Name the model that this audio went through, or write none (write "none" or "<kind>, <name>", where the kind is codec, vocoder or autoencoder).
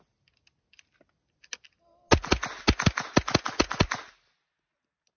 none